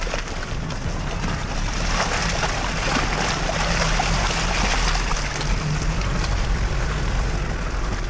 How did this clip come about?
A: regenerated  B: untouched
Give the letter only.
B